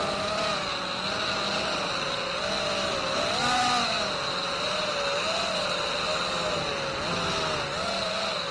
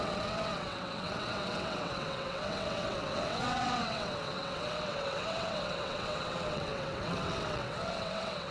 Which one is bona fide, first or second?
first